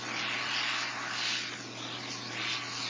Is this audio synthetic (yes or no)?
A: no